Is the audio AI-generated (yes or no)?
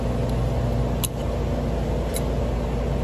no